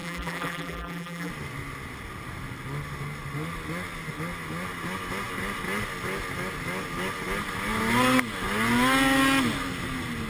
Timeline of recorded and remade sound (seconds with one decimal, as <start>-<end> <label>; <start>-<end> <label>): 0.0-1.3 remade; 1.3-10.3 recorded